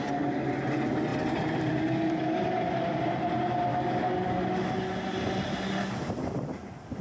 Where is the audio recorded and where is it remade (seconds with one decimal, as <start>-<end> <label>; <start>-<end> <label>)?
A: 0.0-3.7 recorded; 3.7-4.6 remade; 4.6-7.0 recorded